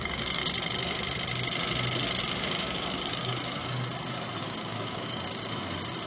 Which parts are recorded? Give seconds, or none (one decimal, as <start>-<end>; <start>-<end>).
0.4-2.2; 3.6-4.4; 5.4-6.1